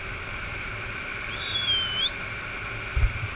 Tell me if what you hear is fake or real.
real